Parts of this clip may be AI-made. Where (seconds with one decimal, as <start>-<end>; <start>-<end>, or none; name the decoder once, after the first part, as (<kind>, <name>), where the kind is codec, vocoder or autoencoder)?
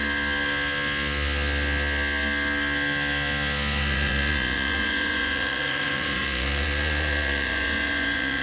3.8-8.4 (vocoder, Vocos)